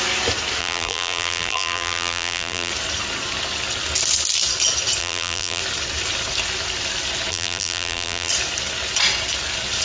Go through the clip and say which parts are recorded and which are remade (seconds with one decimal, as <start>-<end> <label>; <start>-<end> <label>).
0.0-0.6 recorded; 0.6-2.7 remade; 2.7-5.0 recorded; 5.0-5.6 remade; 5.6-7.3 recorded; 7.3-8.3 remade; 8.3-9.8 recorded